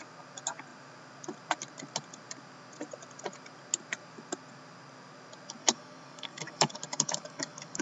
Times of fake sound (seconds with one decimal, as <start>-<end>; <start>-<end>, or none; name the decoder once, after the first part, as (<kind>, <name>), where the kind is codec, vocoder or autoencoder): 5.6-7.8 (codec, DAC)